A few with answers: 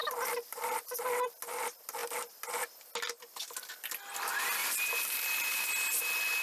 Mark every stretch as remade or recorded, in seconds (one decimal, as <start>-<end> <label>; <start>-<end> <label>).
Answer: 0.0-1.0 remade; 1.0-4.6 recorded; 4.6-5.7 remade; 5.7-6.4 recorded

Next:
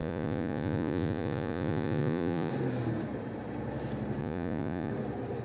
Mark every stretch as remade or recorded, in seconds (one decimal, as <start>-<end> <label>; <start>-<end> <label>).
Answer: 0.0-2.5 remade; 2.5-4.2 recorded; 4.2-4.9 remade; 4.9-5.4 recorded

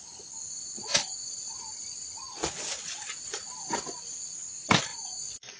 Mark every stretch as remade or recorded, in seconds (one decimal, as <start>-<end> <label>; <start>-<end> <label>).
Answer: 0.0-2.4 recorded; 2.4-3.4 remade; 3.4-4.9 recorded; 4.9-5.6 remade

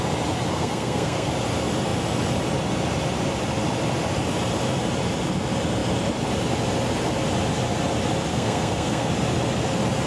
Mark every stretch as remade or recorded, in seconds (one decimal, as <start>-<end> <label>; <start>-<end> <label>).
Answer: 0.0-0.5 recorded; 0.5-1.3 remade; 1.3-8.3 recorded; 8.3-9.1 remade; 9.1-10.1 recorded

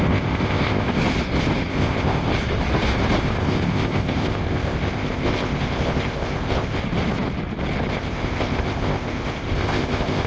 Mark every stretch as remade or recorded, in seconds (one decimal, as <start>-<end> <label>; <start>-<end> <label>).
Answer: 0.0-1.0 remade; 1.0-1.7 recorded; 1.7-2.3 remade; 2.3-3.2 recorded; 3.2-6.8 remade; 6.8-7.9 recorded; 7.9-10.3 remade

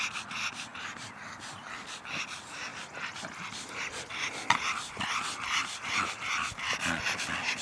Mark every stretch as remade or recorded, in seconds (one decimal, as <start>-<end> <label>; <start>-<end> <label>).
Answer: 0.0-7.6 recorded

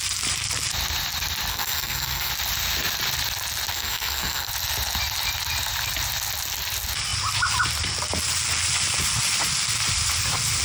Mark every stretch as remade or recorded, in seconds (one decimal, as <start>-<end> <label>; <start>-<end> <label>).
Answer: 0.0-1.5 recorded; 1.5-2.3 remade; 2.3-3.7 recorded; 3.7-4.5 remade; 4.5-10.6 recorded

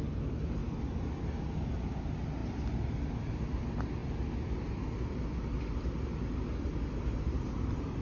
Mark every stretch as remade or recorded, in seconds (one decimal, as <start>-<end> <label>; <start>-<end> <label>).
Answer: 0.0-8.0 recorded